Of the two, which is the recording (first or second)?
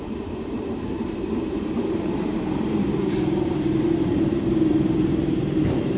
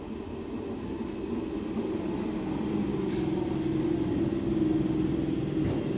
second